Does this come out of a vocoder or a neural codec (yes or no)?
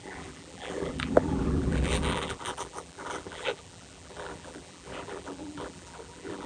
yes